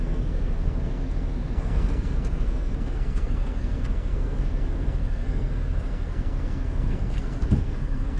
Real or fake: fake